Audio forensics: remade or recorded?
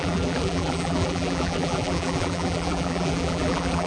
remade